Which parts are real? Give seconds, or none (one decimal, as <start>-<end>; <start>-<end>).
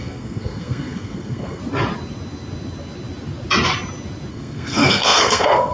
1.6-4.3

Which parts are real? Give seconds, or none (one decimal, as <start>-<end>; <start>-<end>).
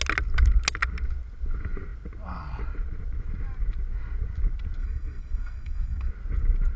0.0-4.8; 6.1-6.8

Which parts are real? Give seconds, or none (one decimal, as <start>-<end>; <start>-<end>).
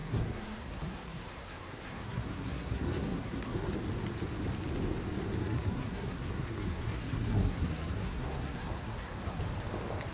3.7-5.4; 9.4-10.1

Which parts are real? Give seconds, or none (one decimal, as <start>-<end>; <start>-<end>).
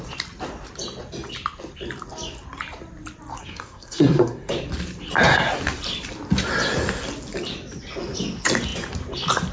0.0-3.4; 4.5-9.5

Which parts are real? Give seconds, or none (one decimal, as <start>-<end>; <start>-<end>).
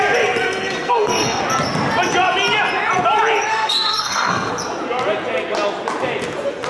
0.0-0.4; 1.4-3.5; 4.5-6.7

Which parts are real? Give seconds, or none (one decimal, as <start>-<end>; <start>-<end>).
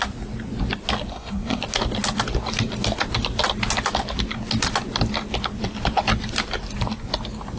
0.0-1.1; 1.6-7.6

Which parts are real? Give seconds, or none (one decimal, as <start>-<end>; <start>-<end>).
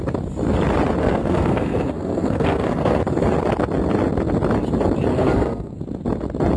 0.0-1.0; 3.0-5.1; 5.8-6.6